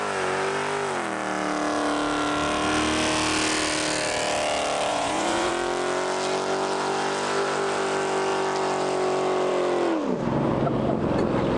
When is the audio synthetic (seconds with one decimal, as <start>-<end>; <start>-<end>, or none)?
4.9-5.5